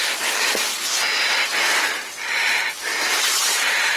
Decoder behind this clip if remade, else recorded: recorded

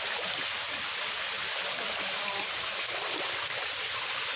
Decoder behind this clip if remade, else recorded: recorded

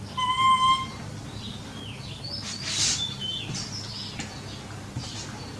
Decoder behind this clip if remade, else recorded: recorded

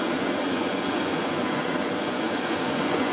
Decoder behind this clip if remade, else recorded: remade, vocoder, Vocos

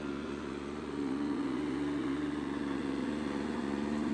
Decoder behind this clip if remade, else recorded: remade, vocoder, Vocos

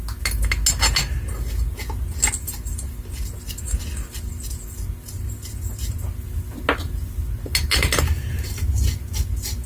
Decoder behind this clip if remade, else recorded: recorded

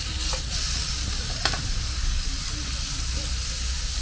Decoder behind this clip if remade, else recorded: recorded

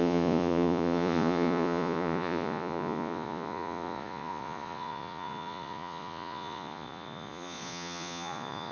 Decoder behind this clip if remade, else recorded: remade, vocoder, Vocos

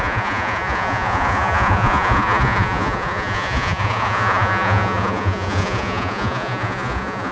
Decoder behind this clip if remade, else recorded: remade, vocoder, Vocos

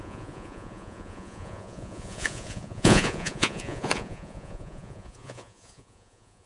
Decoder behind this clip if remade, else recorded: remade, vocoder, Vocos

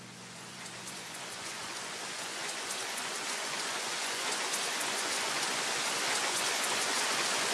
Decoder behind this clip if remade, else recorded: remade, vocoder, Vocos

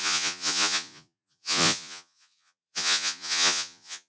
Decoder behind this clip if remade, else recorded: remade, vocoder, Vocos